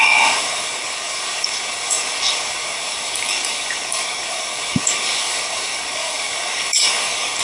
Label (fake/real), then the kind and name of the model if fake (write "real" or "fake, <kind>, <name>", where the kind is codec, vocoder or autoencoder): fake, codec, DAC